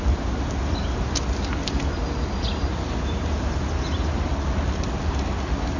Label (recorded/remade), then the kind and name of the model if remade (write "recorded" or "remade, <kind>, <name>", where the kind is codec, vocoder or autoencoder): recorded